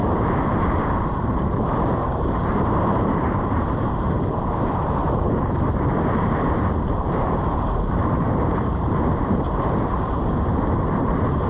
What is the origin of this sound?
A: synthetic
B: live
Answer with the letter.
A